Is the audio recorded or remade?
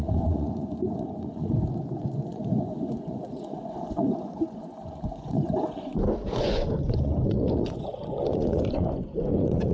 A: remade